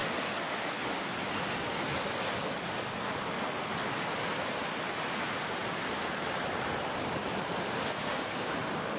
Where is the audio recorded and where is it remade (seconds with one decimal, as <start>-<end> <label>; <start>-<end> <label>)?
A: 0.0-9.0 recorded